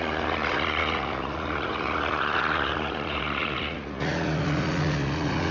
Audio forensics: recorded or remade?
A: remade